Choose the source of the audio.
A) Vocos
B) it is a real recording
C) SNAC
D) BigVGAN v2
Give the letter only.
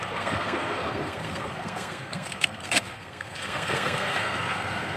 C